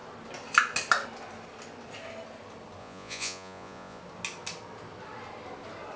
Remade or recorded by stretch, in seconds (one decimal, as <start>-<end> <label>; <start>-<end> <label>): 0.0-2.8 recorded; 2.8-4.0 remade; 4.0-6.0 recorded